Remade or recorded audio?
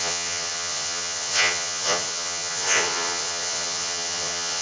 remade